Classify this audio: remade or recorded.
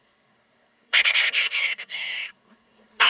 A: remade